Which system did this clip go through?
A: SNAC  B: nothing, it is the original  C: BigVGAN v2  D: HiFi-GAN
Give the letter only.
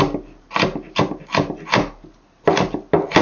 B